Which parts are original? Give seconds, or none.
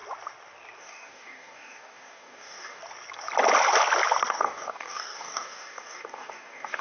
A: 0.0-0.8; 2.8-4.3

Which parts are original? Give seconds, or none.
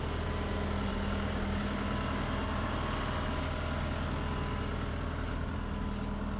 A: 0.0-0.9; 1.6-6.4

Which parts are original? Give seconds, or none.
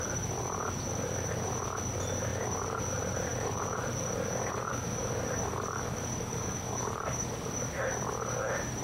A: 0.0-4.7; 7.3-8.8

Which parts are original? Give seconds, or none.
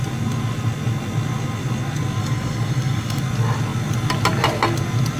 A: 0.0-2.2; 3.2-5.2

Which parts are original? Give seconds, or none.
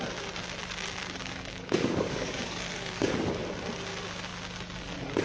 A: 0.0-1.2; 3.3-5.2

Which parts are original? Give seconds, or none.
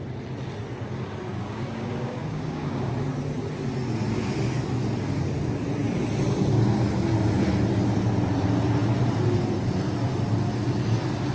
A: 0.0-1.3; 2.9-11.3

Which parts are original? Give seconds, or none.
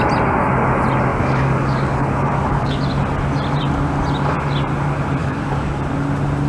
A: 0.0-1.1; 2.8-5.2; 5.8-6.5